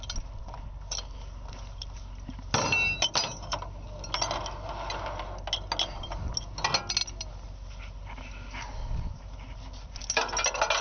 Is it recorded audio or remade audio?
recorded